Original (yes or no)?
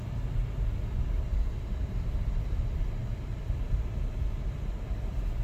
yes